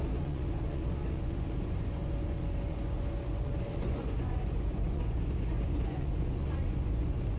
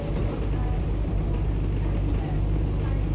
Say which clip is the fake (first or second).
first